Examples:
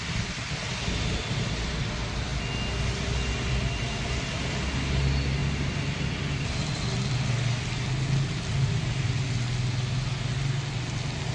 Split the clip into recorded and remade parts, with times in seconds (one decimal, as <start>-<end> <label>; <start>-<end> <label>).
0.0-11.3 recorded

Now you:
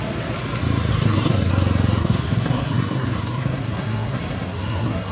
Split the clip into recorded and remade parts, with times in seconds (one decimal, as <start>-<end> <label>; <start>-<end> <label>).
0.0-0.9 recorded; 0.9-1.5 remade; 1.5-2.0 recorded; 2.0-5.1 remade

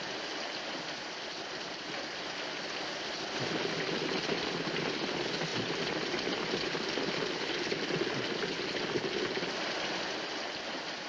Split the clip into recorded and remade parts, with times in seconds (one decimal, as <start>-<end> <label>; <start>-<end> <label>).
0.0-11.1 recorded